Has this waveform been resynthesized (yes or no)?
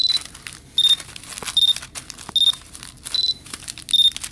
no